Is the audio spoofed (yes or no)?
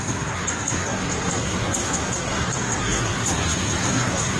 yes